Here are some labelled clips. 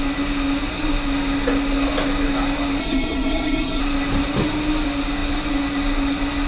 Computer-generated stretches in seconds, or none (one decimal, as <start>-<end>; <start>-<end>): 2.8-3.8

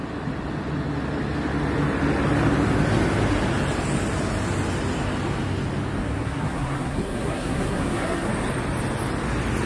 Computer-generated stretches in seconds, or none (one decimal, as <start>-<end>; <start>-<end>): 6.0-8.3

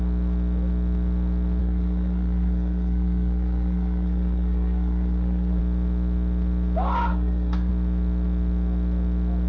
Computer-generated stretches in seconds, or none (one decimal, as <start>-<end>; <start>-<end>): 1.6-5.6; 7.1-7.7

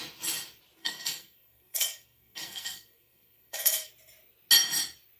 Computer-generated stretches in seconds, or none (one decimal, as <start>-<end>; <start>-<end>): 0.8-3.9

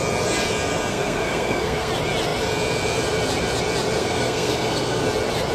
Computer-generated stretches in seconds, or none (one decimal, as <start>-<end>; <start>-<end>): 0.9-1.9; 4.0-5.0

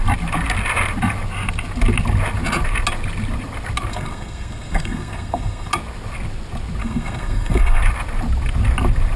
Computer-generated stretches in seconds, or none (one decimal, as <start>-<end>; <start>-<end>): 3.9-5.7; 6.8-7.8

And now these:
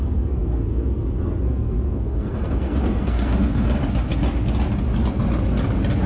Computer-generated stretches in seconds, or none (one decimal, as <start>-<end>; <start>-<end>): 0.0-3.8

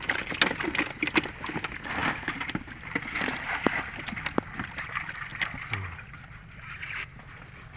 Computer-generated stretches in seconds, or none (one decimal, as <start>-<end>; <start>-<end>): none